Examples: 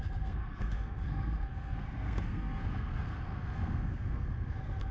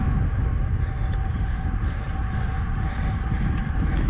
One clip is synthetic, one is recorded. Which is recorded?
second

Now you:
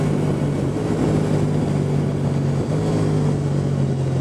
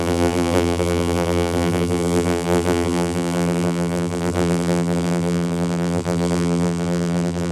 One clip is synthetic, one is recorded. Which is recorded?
first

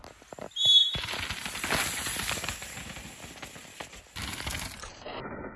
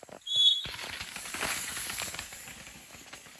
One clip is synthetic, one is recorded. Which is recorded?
first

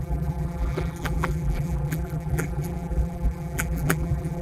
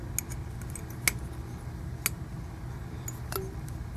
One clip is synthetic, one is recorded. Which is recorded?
second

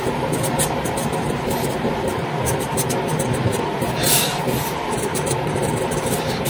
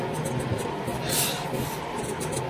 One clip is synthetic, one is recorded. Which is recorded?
second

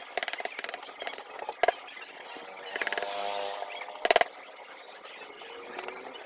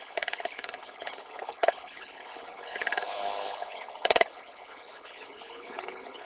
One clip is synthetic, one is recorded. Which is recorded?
first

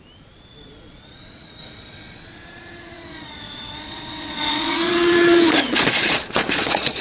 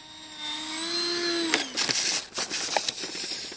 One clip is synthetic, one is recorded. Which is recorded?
second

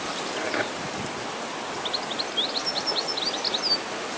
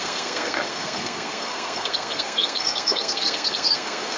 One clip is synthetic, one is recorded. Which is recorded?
first